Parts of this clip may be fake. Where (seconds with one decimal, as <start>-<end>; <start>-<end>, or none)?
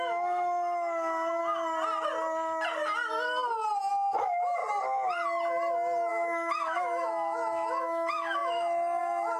0.0-1.4; 3.9-4.6; 6.1-9.4